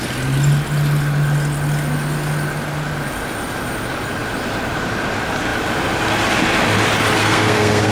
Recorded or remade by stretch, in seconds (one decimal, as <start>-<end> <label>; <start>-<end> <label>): 0.0-7.2 recorded; 7.2-7.9 remade